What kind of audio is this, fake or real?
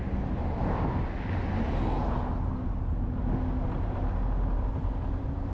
real